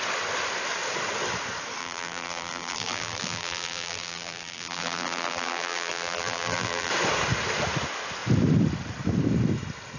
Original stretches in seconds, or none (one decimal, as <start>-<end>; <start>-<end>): 0.0-1.8; 6.9-10.0